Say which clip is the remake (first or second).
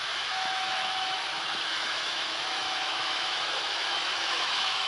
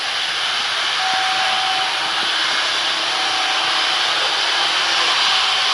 first